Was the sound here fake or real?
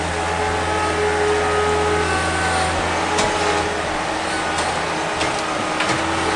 real